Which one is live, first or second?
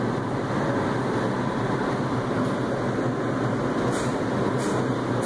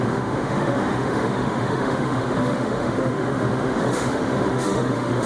first